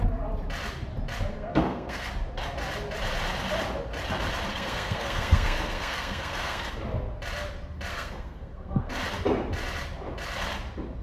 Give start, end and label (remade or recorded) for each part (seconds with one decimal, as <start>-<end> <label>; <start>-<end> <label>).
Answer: 0.0-1.3 recorded; 1.3-2.1 remade; 2.1-4.5 recorded; 4.5-6.8 remade; 6.8-7.9 recorded; 7.9-8.9 remade; 8.9-11.0 recorded